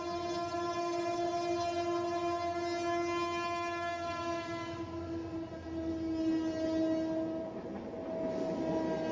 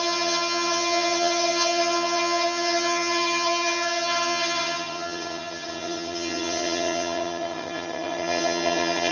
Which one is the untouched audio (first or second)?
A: first